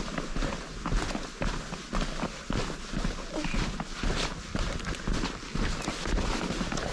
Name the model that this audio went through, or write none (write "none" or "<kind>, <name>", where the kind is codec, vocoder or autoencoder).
none